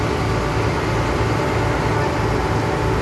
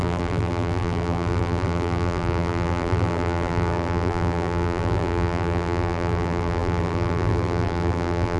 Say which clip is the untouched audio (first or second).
first